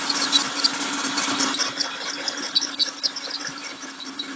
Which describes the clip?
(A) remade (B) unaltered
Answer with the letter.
B